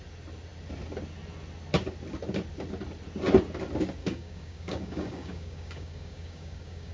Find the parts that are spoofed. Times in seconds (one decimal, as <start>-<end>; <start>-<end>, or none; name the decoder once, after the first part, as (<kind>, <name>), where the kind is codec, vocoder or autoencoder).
4.0-6.9 (codec, DAC)